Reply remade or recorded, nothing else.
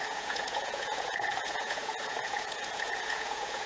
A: remade